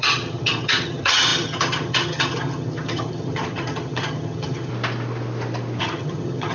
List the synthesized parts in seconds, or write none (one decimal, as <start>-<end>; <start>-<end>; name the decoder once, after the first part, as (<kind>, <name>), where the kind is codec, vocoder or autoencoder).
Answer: 0.0-4.7 (vocoder, HiFi-GAN); 5.8-6.5